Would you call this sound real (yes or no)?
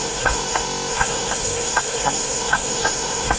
no